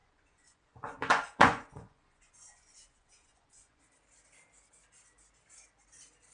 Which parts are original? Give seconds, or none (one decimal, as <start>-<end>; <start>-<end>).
3.8-6.3